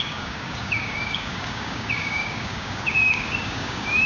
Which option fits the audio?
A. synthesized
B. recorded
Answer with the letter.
A